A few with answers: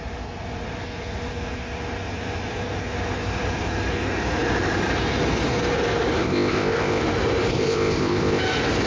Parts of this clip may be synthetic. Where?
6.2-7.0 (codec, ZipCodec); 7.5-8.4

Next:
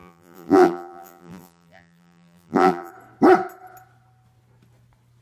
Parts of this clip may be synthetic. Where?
0.0-2.9 (vocoder, BigVGAN v2)

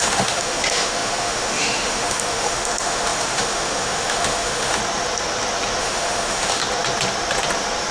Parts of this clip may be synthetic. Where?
0.0-4.8 (autoencoder, DAC-VAE); 5.8-6.6

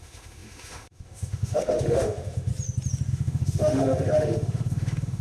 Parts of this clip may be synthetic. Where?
0.0-2.5 (autoencoder, DAC-VAE); 3.1-5.2

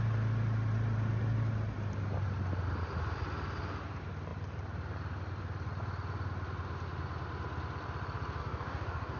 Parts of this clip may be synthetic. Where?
8.4-9.2 (codec, DAC)

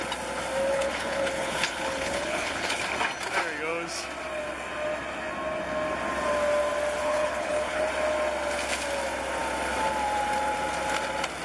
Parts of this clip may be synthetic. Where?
0.7-2.8 (codec, HILCodec); 7.0-7.9

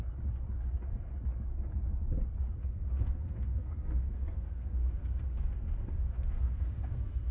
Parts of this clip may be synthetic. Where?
2.6-7.3 (codec, SNAC)

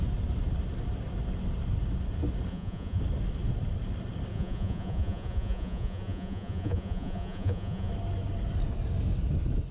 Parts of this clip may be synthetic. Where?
2.5-3.0 (vocoder, Vocos); 4.3-7.9